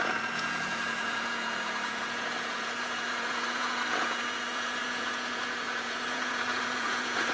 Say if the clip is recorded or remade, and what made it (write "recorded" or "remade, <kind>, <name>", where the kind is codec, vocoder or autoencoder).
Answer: remade, vocoder, Vocos